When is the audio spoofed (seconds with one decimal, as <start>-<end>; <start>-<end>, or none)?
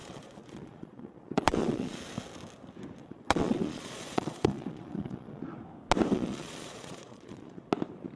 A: 0.0-2.0; 3.0-5.4; 6.1-7.7